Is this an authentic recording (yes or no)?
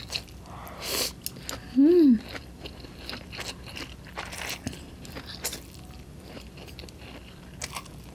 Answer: yes